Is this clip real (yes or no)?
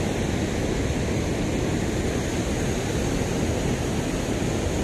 yes